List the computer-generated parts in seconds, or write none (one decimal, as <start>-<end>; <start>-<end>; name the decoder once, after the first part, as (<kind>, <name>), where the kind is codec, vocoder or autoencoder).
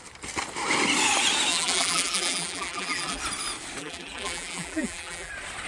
1.5-3.2 (vocoder, BigVGAN v2); 3.8-5.3